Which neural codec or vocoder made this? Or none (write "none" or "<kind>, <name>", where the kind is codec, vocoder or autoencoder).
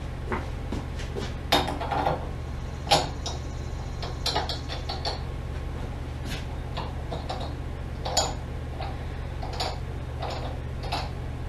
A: none